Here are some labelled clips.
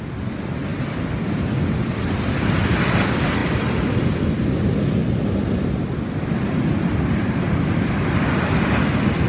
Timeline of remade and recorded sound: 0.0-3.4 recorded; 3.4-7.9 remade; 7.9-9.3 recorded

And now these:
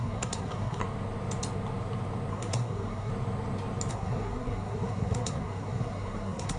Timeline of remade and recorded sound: 0.0-0.8 remade; 0.8-2.3 recorded; 2.3-3.1 remade; 3.1-3.9 recorded; 3.9-6.6 remade